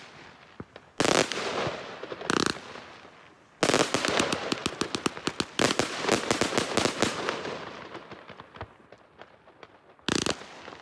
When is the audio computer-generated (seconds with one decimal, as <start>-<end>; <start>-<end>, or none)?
none